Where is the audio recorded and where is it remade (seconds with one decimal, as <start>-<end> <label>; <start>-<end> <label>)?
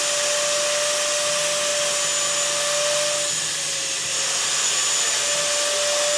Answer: 0.0-6.2 recorded